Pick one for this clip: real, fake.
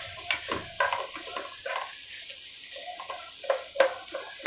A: real